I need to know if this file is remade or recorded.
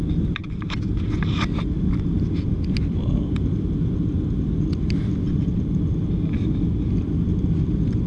recorded